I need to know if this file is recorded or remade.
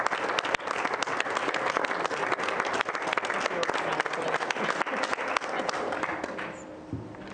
recorded